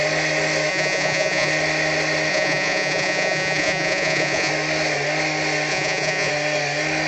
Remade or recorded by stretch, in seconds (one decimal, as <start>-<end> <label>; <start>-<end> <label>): 0.0-0.7 recorded; 0.7-1.5 remade; 1.5-2.3 recorded; 2.3-4.5 remade; 4.5-5.7 recorded; 5.7-6.3 remade; 6.3-7.1 recorded